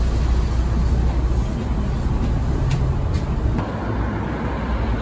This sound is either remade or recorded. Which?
recorded